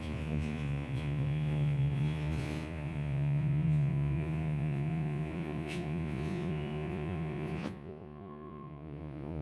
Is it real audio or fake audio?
fake